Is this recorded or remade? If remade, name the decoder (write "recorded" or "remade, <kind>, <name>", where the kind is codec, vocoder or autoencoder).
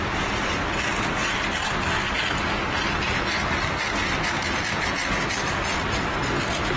recorded